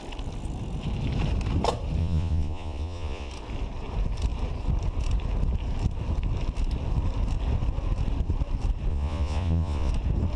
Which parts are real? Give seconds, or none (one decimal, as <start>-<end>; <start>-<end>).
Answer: 0.0-2.0; 3.3-8.9; 9.9-10.4